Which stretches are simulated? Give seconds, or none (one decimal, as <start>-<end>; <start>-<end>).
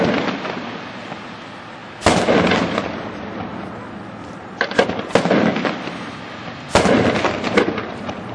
none